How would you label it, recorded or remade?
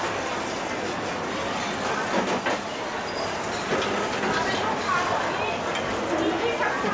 recorded